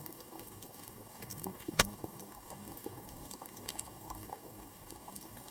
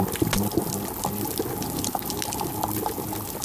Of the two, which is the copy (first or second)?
first